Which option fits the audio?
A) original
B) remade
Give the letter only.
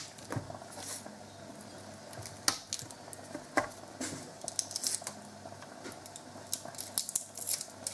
A